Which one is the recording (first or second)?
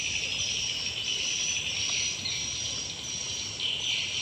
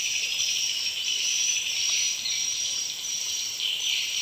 first